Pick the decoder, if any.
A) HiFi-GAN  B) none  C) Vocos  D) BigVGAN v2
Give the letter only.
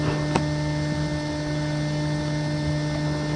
B